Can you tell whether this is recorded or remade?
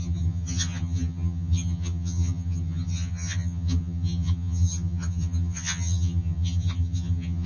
remade